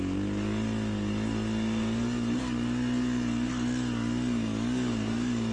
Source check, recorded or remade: recorded